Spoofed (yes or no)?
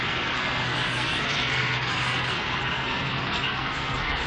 yes